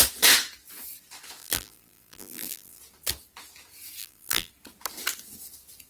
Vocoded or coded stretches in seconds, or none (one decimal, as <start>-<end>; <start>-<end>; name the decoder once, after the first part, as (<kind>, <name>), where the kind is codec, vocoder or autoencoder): 1.4-2.8 (vocoder, BigVGAN v2); 4.0-4.5